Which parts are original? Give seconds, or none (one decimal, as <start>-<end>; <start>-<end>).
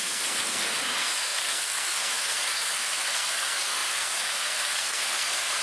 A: none